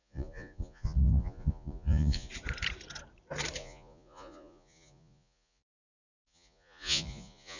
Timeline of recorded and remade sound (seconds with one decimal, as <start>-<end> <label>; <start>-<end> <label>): 0.0-2.3 remade; 2.3-3.6 recorded; 3.6-7.6 remade